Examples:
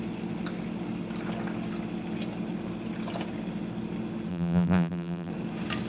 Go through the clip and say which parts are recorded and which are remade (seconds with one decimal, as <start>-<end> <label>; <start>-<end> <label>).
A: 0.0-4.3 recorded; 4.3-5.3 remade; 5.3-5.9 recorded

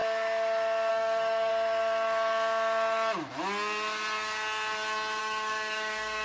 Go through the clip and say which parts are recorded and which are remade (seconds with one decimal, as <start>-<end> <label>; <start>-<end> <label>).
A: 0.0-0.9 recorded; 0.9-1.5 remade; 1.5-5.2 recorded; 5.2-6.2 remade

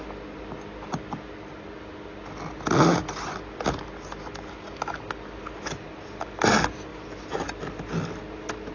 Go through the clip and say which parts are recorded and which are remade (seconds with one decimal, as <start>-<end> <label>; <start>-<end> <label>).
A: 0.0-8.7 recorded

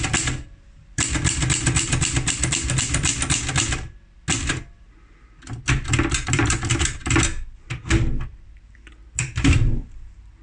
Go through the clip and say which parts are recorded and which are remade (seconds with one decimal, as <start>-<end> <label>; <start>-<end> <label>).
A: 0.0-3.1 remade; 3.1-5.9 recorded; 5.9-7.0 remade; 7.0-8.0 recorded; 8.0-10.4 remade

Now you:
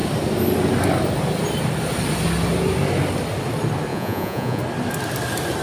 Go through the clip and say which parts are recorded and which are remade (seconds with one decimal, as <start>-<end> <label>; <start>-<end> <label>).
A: 0.0-3.9 recorded; 3.9-4.6 remade; 4.6-5.6 recorded

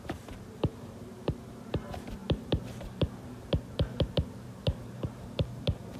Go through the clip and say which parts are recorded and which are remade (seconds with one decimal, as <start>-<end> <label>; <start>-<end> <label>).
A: 0.0-6.0 remade